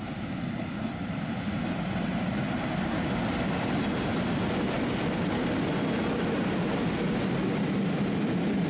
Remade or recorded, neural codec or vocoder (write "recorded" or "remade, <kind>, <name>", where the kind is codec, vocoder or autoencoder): recorded